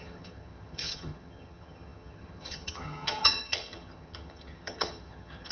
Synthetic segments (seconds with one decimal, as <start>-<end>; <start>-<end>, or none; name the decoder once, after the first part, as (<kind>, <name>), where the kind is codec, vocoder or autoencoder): 0.0-5.5 (vocoder, HiFi-GAN)